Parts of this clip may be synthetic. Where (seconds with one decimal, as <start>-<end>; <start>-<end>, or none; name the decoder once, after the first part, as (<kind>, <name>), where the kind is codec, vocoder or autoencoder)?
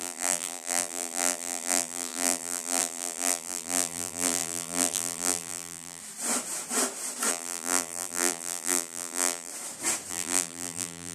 0.0-6.0 (vocoder, BigVGAN v2); 7.3-9.5; 10.1-11.1